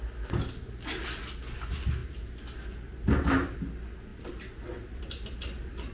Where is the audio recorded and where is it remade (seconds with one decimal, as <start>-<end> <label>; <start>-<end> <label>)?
0.0-5.9 recorded